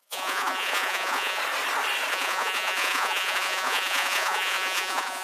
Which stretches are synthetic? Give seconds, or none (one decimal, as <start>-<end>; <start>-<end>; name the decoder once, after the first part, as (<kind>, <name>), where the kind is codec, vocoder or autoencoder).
0.0-1.4 (vocoder, Vocos); 2.1-5.2